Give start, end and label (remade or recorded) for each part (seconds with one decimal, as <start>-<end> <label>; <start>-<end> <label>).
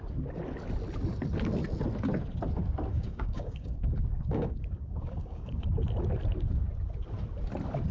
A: 0.0-2.9 recorded; 2.9-5.6 remade; 5.6-7.9 recorded